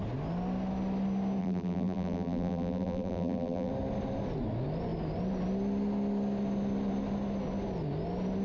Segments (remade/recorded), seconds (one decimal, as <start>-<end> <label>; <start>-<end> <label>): 0.0-1.4 recorded; 1.4-3.7 remade; 3.7-8.4 recorded